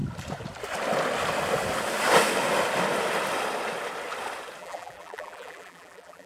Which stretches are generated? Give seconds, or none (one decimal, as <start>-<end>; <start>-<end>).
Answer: 4.6-6.3